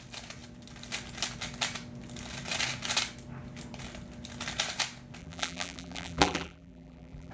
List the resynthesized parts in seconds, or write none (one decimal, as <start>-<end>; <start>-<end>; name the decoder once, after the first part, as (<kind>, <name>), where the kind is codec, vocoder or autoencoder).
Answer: 5.2-7.3 (vocoder, BigVGAN v2)